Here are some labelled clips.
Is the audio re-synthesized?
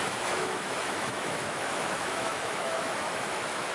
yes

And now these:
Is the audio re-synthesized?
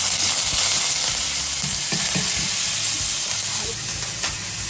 no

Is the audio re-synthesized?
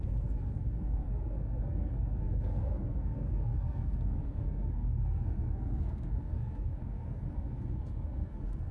yes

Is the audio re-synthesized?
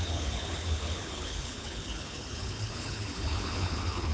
yes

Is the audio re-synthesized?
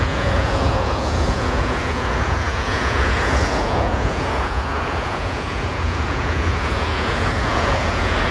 yes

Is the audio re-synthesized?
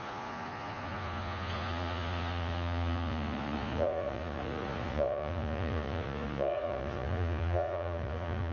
yes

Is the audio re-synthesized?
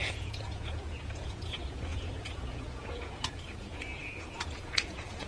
yes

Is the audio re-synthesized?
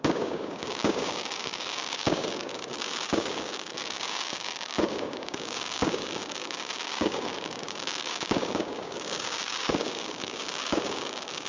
yes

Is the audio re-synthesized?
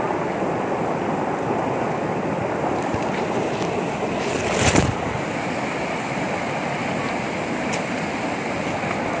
no